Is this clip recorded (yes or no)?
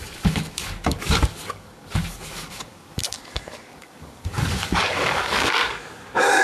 no